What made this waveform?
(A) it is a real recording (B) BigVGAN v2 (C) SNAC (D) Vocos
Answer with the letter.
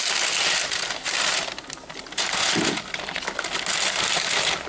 A